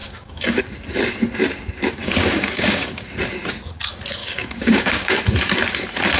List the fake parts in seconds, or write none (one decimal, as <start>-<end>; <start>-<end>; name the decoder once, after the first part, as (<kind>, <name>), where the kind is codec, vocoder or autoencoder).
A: 0.0-0.6 (codec, DAC); 2.0-3.2; 4.2-5.2